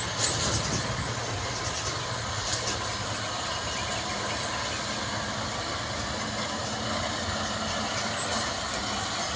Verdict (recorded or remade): recorded